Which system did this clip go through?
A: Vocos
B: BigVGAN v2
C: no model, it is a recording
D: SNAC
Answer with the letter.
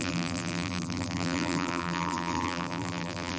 B